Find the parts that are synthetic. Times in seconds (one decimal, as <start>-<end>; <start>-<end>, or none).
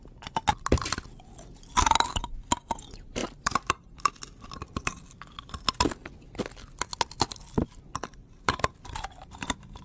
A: 3.2-4.1; 8.2-9.8